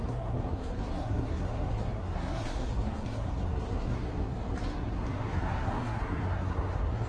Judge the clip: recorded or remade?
remade